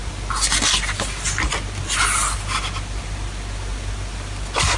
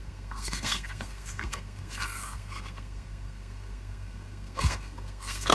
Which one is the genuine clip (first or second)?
first